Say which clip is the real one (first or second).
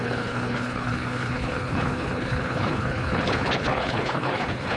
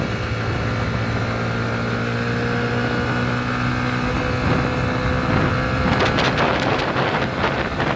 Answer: second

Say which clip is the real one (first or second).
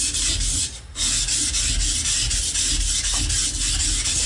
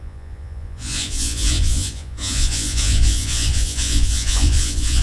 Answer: first